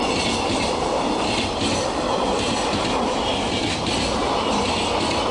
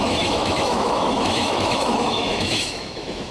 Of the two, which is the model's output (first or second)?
second